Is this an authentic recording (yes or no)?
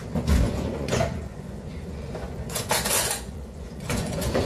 no